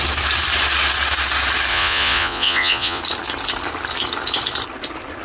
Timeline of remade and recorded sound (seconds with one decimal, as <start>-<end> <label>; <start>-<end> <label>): 0.0-1.7 recorded; 1.7-3.0 remade; 3.0-5.2 recorded